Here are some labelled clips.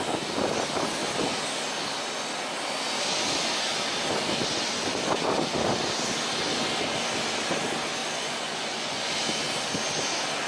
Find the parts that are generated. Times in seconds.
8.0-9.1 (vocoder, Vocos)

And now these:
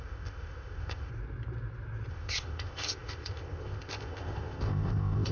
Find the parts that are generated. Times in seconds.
0.0-1.1 (codec, ZipCodec); 2.1-5.3

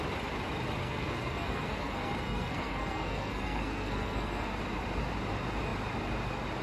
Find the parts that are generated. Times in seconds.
0.8-4.6 (codec, SNAC)